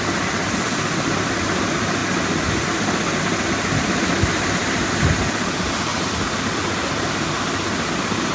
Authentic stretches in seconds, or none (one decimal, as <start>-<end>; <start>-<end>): 0.0-8.3